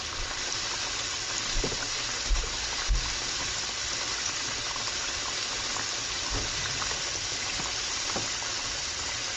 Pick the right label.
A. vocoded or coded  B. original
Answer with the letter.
B